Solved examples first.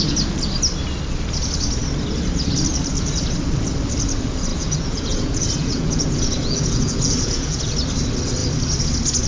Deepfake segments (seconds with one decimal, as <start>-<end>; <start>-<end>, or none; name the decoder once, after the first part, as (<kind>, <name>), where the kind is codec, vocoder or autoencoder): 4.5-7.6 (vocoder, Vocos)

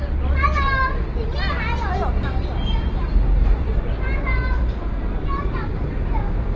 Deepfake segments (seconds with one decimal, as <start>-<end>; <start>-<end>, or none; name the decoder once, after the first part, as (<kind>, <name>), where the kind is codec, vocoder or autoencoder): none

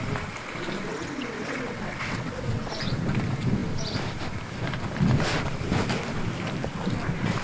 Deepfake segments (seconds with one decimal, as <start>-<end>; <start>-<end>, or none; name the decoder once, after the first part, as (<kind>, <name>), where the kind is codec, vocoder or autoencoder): 0.9-2.7 (vocoder, WaveNeXt)

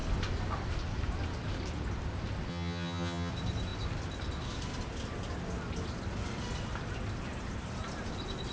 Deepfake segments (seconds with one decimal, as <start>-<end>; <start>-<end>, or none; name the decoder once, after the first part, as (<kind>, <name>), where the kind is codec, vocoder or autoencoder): 2.5-3.3 (vocoder, HiFi-GAN)

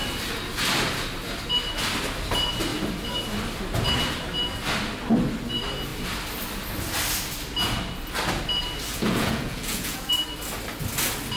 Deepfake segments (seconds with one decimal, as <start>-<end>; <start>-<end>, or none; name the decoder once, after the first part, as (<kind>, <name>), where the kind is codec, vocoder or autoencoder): 8.9-10.1 (vocoder, Vocos)